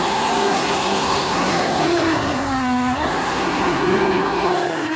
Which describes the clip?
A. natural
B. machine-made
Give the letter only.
B